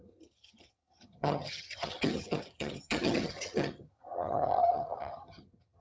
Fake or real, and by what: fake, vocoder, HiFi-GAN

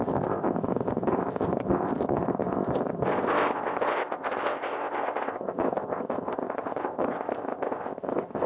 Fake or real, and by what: fake, codec, ZipCodec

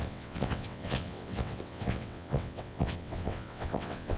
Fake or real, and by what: fake, vocoder, WaveNeXt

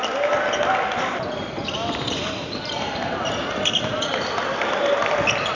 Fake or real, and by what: real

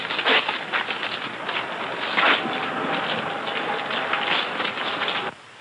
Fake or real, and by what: real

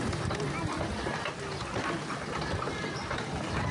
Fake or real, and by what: real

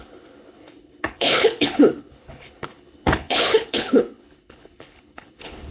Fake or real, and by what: fake, codec, HILCodec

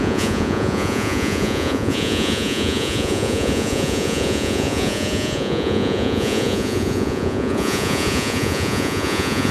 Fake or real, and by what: fake, vocoder, Vocos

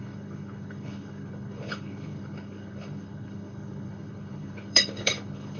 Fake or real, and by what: fake, codec, HILCodec